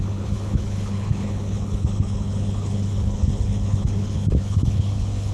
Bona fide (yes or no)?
no